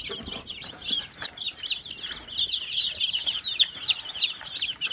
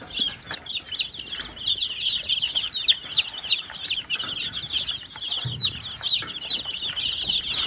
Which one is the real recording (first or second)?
second